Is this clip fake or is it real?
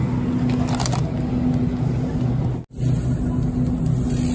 real